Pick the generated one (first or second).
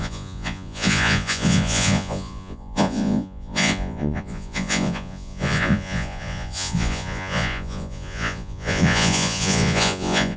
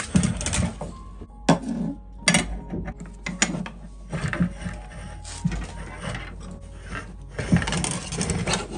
first